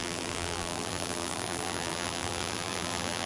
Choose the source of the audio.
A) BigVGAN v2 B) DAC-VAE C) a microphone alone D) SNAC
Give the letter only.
A